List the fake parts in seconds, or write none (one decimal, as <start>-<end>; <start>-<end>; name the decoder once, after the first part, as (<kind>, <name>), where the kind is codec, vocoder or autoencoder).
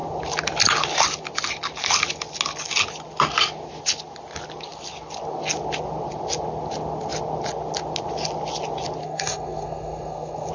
9.0-10.5 (codec, SNAC)